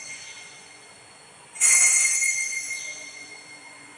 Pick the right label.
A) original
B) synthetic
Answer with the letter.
B